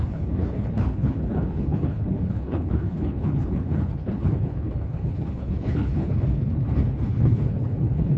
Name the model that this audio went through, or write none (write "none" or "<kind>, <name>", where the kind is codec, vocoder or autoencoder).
codec, HILCodec